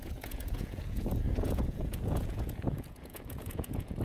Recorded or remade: remade